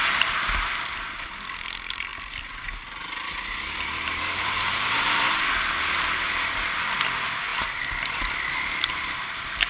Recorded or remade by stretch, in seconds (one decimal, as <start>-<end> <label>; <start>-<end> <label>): 0.0-9.7 recorded